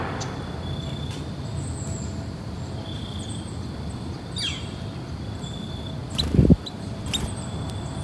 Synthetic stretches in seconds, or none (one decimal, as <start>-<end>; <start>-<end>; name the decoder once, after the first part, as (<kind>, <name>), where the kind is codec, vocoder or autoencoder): none